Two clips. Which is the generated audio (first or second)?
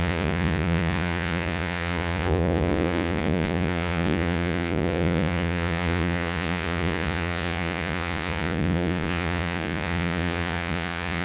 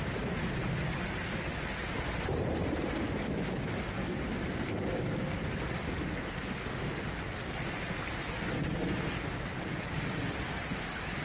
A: first